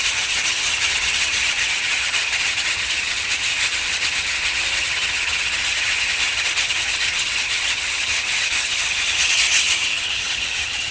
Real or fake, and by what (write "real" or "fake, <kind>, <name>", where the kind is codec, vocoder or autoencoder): fake, vocoder, HiFi-GAN